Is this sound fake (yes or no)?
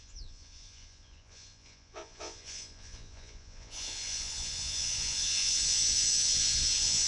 yes